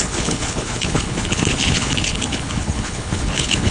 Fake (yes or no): yes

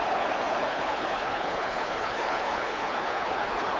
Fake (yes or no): yes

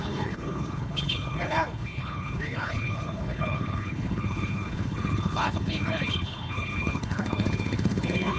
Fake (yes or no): yes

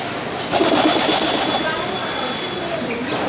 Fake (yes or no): no